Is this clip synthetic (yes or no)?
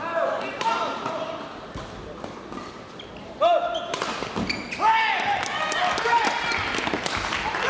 no